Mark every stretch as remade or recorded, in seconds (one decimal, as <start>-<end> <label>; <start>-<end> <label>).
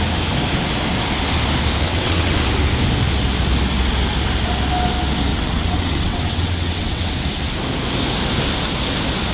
0.0-1.8 recorded; 1.8-2.4 remade; 2.4-5.3 recorded; 5.3-7.1 remade; 7.1-9.3 recorded